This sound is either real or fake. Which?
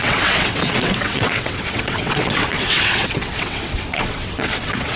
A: fake